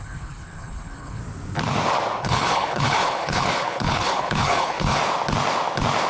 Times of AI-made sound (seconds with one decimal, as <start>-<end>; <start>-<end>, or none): 0.0-1.2; 2.2-5.0